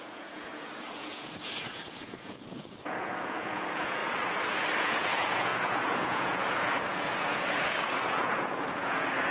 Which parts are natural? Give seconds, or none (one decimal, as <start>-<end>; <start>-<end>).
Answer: 4.0-4.8